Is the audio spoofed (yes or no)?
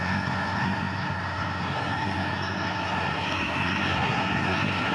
yes